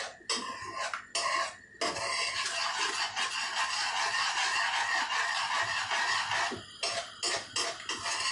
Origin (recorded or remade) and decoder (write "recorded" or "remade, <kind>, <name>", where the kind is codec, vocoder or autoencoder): recorded